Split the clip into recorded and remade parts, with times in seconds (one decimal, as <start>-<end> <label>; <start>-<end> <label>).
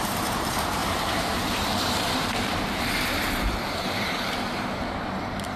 0.0-5.6 remade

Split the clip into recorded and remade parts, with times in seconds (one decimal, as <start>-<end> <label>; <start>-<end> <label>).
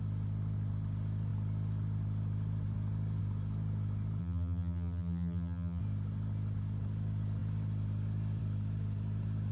0.0-4.2 recorded; 4.2-5.8 remade; 5.8-9.5 recorded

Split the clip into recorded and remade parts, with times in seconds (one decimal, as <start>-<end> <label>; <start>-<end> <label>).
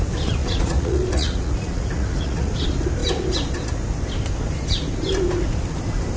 0.0-0.4 recorded; 0.4-2.5 remade; 2.5-6.2 recorded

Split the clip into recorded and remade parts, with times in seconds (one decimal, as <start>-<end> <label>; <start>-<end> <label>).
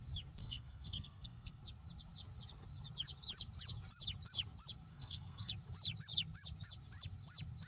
0.0-0.4 recorded; 0.4-1.6 remade; 1.6-4.9 recorded; 4.9-5.5 remade; 5.5-7.7 recorded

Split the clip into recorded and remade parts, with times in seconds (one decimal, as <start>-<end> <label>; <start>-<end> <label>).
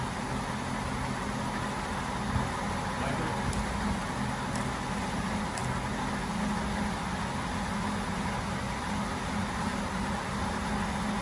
0.0-9.7 recorded; 9.7-10.5 remade; 10.5-11.2 recorded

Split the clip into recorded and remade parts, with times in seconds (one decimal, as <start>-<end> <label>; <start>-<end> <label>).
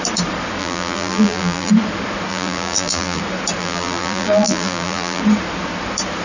0.0-0.6 recorded; 0.6-1.7 remade; 1.7-2.3 recorded; 2.3-3.2 remade; 3.2-3.6 recorded; 3.6-5.2 remade; 5.2-6.2 recorded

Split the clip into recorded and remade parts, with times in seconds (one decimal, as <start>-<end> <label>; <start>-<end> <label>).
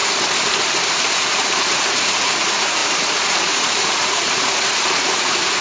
0.0-0.9 recorded; 0.9-5.6 remade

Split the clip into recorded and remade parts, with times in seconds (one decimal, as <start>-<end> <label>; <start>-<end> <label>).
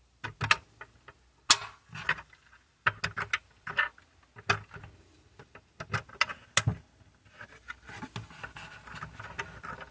0.0-9.9 recorded